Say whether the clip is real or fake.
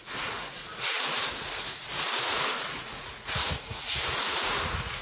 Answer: fake